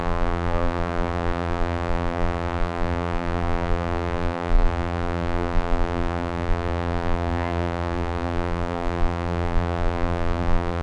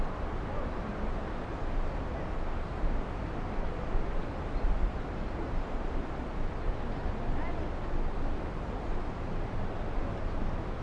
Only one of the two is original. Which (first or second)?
second